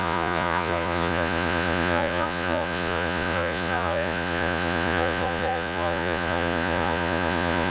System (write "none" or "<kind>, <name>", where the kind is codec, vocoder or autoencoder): vocoder, Vocos